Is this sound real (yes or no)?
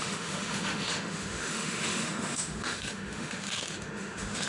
no